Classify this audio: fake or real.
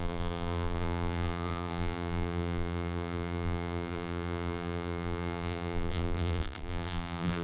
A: fake